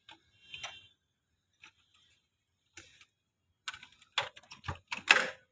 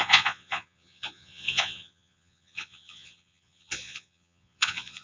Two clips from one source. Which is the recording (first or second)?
first